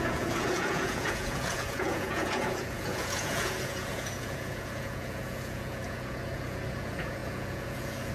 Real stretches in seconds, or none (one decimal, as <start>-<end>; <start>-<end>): none